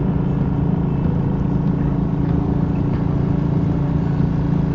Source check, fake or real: real